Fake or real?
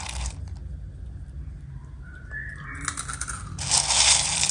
real